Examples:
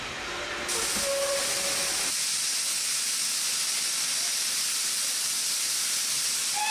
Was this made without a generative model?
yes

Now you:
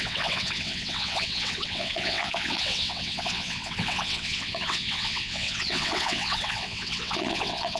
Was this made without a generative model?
no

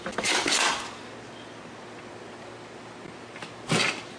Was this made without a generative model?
yes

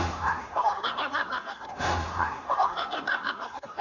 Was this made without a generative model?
no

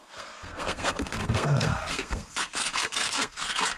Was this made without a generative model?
no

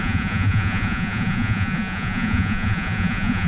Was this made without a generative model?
no